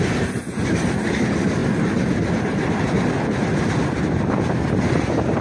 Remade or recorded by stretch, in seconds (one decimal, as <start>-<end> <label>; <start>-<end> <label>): 0.0-5.4 recorded